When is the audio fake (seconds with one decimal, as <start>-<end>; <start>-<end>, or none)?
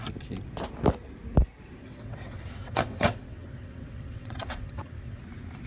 1.8-5.2